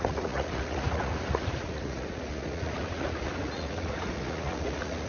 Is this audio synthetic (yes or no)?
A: yes